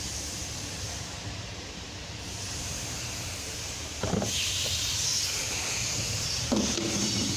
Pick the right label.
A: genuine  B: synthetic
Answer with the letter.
B